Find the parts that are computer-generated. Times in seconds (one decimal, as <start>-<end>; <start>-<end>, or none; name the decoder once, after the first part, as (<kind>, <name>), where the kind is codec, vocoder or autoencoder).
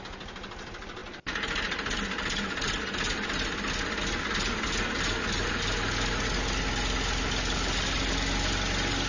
none